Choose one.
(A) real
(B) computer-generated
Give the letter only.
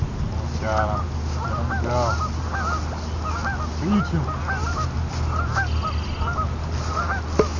A